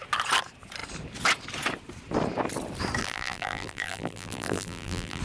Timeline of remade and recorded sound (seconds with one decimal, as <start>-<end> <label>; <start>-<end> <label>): 0.0-3.0 recorded; 3.0-5.2 remade